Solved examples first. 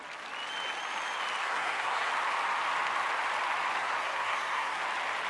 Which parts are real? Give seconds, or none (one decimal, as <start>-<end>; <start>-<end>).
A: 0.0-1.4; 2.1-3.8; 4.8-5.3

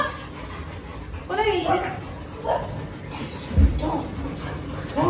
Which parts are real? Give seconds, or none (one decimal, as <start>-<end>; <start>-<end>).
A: 0.0-0.9; 2.1-3.7; 4.2-5.1

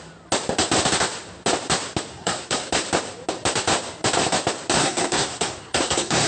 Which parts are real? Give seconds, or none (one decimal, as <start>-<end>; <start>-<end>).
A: 0.0-2.1; 2.7-4.8